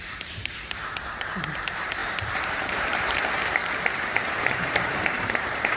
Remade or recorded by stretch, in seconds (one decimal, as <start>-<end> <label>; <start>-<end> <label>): 0.0-0.8 remade; 0.8-1.3 recorded; 1.3-5.8 remade